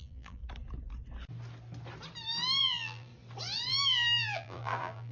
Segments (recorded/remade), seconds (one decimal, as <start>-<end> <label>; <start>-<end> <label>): 0.0-0.4 remade; 0.4-2.6 recorded; 2.6-3.1 remade; 3.1-3.7 recorded; 3.7-5.1 remade